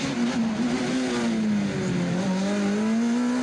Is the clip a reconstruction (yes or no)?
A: no